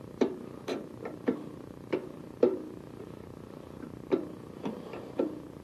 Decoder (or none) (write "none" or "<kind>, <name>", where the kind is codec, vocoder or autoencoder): vocoder, BigVGAN v2